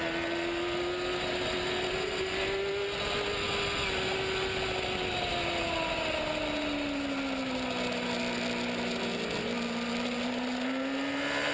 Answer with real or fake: real